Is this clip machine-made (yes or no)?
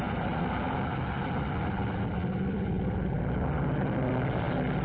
no